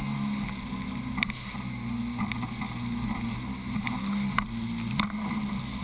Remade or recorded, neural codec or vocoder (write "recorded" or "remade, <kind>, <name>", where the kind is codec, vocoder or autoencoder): recorded